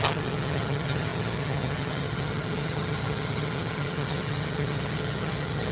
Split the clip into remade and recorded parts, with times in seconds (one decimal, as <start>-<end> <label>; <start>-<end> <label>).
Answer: 0.0-5.7 remade